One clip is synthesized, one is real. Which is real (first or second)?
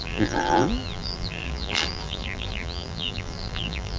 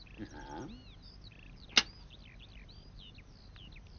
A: second